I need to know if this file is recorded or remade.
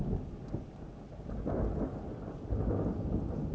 recorded